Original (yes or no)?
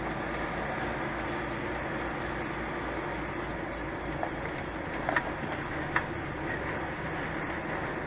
yes